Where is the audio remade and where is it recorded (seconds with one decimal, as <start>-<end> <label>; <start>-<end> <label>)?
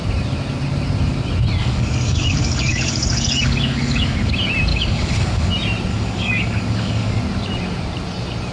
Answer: 0.0-1.6 recorded; 1.6-4.3 remade; 4.3-4.7 recorded; 4.7-5.5 remade; 5.5-5.9 recorded; 5.9-7.2 remade; 7.2-8.5 recorded